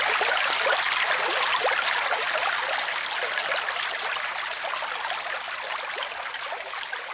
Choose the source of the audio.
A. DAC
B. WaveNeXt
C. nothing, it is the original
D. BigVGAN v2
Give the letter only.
C